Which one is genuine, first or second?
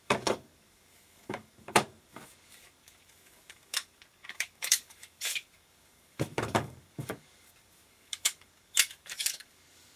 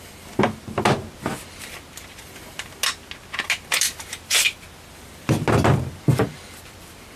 second